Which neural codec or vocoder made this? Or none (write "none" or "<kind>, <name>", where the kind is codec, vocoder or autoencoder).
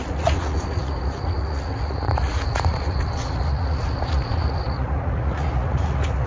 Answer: vocoder, Vocos